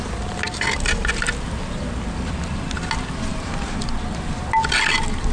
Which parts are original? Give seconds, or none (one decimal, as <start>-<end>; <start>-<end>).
0.0-3.3; 3.8-5.3

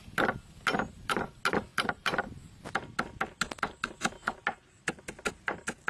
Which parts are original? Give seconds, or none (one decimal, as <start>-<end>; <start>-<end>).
0.0-1.7; 2.6-5.9

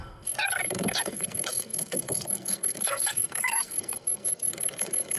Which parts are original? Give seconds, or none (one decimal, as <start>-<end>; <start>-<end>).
none

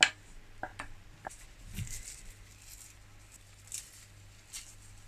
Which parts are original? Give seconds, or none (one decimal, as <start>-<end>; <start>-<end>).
0.0-5.1

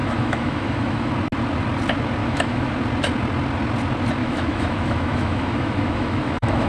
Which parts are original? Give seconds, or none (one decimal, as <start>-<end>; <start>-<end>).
1.1-2.2; 2.7-4.2

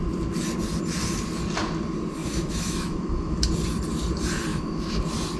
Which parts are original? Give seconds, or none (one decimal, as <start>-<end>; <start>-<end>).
0.0-2.2; 3.5-4.5; 5.0-5.4

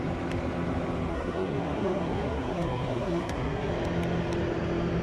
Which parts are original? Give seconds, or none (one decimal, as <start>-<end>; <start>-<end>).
0.0-1.1; 3.7-5.0